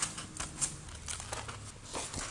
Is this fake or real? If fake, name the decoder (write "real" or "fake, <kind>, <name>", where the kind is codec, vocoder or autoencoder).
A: real